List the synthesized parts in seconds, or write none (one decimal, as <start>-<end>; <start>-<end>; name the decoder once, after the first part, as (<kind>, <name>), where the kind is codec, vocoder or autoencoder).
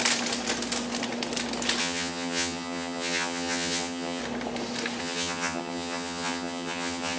1.8-4.2 (vocoder, HiFi-GAN); 5.0-7.2